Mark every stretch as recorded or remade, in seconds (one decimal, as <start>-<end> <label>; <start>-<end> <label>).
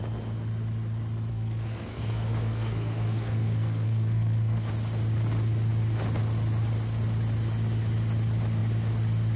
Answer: 0.0-1.3 recorded; 1.3-4.7 remade; 4.7-9.4 recorded